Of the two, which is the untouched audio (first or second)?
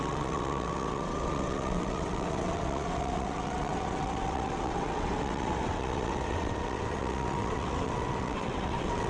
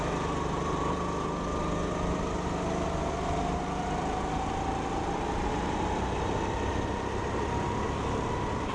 second